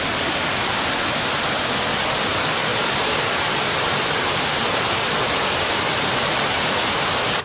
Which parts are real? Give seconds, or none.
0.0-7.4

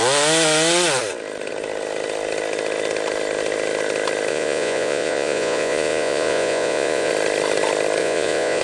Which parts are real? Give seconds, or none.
0.0-4.3; 7.1-8.0

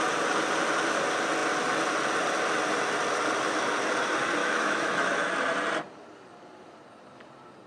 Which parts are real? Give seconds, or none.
0.0-4.4; 5.3-7.7